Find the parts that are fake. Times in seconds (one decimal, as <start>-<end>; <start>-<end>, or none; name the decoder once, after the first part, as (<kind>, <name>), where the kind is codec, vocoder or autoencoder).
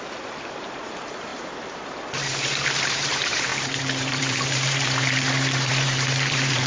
0.0-6.7 (vocoder, BigVGAN v2)